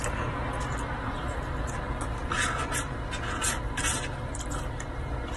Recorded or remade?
recorded